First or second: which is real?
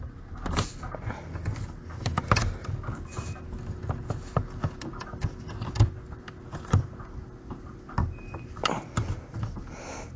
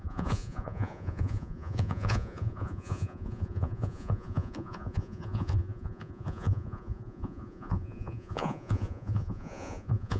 first